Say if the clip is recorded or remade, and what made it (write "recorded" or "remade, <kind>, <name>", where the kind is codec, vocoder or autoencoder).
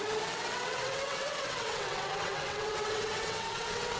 remade, vocoder, WaveNeXt